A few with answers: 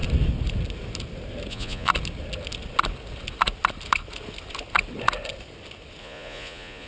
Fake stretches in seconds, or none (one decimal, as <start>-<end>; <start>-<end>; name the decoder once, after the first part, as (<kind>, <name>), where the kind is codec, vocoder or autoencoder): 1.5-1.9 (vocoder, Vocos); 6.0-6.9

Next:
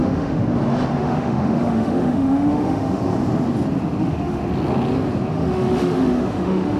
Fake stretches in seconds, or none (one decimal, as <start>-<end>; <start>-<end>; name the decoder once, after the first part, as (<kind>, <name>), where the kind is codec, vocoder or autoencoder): 0.0-0.4 (autoencoder, DAC-VAE); 1.0-3.0; 4.0-4.4; 5.3-6.8

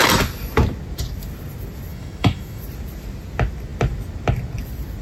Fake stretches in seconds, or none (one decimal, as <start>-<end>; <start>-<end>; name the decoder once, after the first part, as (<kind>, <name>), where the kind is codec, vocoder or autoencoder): 1.9-2.6 (autoencoder, DAC-VAE)